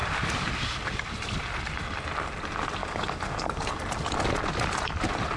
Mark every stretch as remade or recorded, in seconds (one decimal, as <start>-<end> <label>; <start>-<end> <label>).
0.0-2.8 recorded; 2.8-3.8 remade; 3.8-5.4 recorded